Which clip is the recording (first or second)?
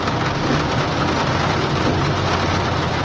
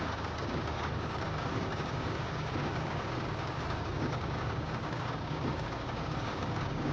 first